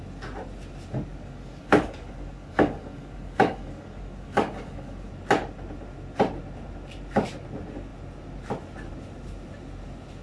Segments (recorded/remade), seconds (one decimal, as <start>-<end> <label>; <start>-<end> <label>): 0.0-1.1 recorded; 1.1-5.1 remade; 5.1-10.2 recorded

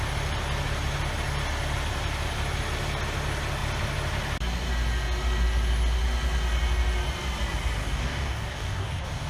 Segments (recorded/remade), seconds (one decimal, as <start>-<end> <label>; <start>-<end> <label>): 0.0-7.8 recorded; 7.8-9.3 remade

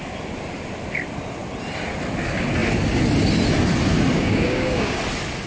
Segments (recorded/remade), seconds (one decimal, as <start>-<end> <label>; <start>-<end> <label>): 0.0-4.1 recorded; 4.1-5.0 remade; 5.0-5.5 recorded